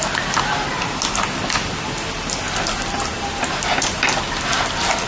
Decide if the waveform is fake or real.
real